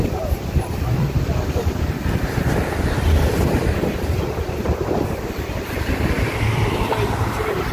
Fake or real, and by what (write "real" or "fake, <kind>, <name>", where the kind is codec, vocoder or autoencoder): fake, vocoder, BigVGAN v2